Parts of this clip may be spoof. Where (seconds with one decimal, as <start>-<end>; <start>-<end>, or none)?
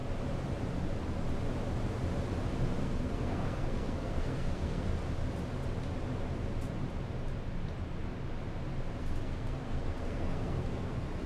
2.8-4.9; 9.0-11.3